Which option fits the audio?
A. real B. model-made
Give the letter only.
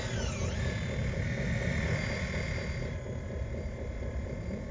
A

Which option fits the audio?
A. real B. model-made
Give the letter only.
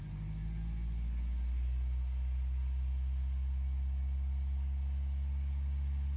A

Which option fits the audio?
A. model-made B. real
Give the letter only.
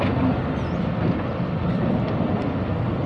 B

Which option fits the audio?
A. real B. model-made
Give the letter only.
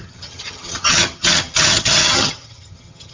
B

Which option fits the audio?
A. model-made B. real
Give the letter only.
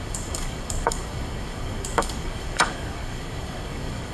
A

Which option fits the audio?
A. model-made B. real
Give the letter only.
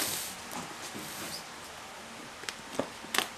B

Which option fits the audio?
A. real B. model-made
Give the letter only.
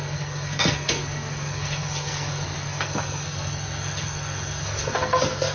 B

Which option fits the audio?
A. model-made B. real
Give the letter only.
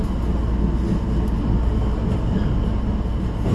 B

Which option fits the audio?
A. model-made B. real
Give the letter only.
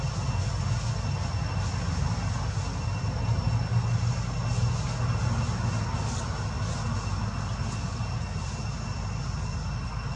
B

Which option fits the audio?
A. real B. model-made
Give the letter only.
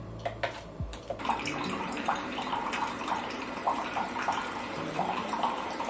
B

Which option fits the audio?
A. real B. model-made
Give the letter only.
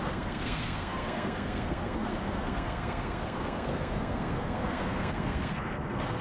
B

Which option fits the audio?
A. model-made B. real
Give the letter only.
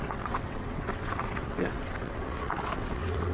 A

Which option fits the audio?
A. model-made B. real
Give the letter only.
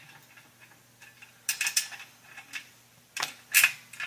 B